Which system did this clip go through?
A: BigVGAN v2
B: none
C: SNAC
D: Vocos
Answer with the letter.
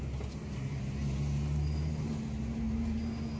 B